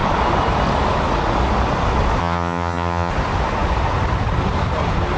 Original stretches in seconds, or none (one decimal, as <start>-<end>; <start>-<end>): 0.0-2.2; 3.1-5.2